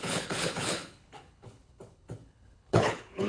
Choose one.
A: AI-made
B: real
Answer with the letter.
A